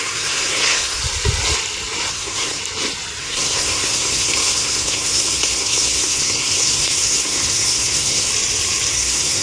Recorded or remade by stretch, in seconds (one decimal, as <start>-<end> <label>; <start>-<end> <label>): 0.0-1.0 remade; 1.0-2.1 recorded; 2.1-2.6 remade; 2.6-3.2 recorded; 3.2-8.3 remade; 8.3-8.9 recorded; 8.9-9.4 remade